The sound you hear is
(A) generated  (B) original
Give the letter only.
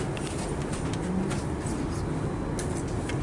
B